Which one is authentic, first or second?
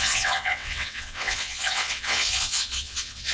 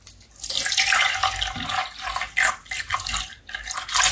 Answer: second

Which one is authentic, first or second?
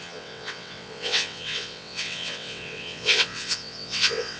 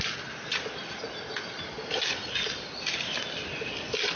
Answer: second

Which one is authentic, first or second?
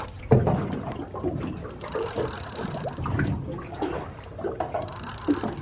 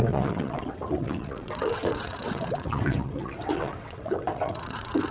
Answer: first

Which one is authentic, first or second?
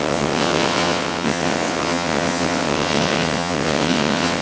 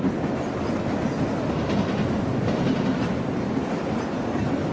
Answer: second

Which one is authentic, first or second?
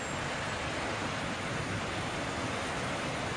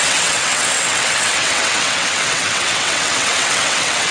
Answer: first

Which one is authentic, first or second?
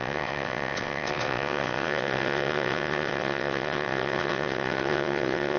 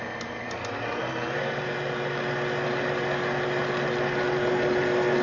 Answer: second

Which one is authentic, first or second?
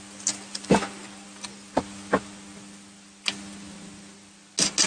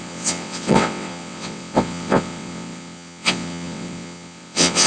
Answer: first